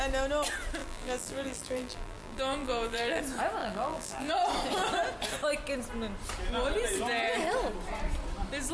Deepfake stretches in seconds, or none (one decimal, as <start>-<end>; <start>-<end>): 0.8-3.2; 3.6-4.3